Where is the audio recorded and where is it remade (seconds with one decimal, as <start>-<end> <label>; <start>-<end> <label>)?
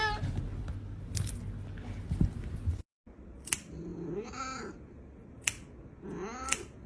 0.0-6.9 recorded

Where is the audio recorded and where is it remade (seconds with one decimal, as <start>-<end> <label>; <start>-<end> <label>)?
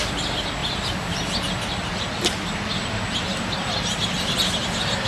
0.0-5.1 recorded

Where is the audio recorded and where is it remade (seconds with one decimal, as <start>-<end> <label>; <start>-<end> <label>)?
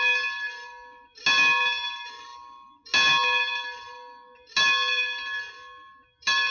0.0-6.5 recorded